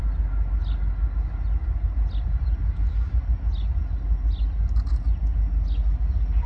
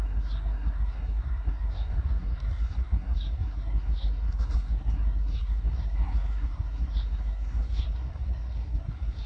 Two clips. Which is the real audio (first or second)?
first